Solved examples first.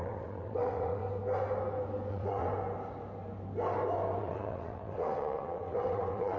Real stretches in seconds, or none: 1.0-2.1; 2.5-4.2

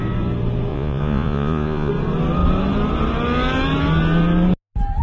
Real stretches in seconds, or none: 0.0-0.7; 1.9-5.0